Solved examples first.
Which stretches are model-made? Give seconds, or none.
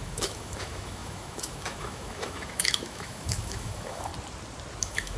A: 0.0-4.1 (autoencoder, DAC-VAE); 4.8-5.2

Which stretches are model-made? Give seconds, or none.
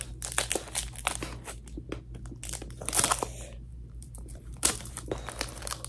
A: 3.7-5.1 (vocoder, BigVGAN v2)